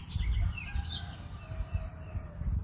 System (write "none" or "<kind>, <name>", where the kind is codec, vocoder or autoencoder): none